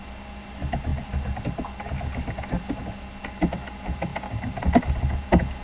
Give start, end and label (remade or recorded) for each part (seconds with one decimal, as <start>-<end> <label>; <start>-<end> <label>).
0.0-5.6 recorded